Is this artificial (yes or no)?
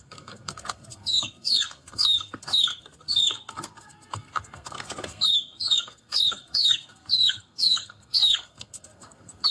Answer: yes